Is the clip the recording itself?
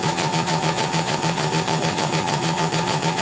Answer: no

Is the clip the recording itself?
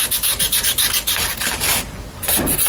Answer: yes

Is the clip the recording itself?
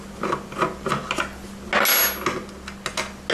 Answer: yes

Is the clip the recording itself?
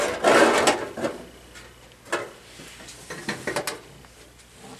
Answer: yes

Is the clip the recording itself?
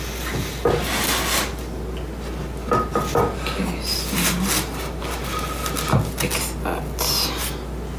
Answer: yes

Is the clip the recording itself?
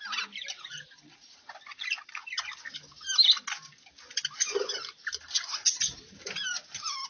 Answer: yes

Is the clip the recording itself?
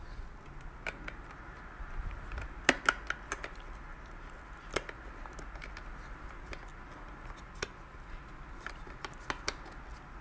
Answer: yes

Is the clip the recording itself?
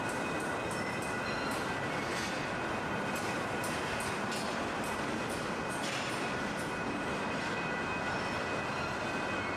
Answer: yes